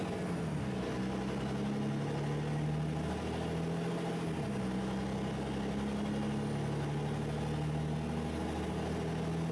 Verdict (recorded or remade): recorded